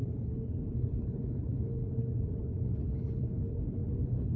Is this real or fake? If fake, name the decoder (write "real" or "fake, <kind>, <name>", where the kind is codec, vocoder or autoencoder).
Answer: fake, codec, HILCodec